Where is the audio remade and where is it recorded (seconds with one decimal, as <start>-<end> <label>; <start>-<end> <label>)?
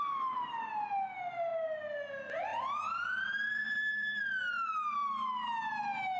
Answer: 0.0-2.5 recorded; 2.5-4.2 remade; 4.2-6.2 recorded